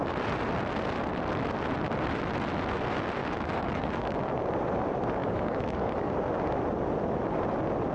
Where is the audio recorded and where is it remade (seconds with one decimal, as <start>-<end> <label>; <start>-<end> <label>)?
0.0-3.2 recorded; 3.2-4.2 remade; 4.2-5.2 recorded; 5.2-6.1 remade; 6.1-7.9 recorded